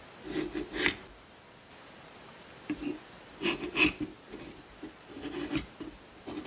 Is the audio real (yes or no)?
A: yes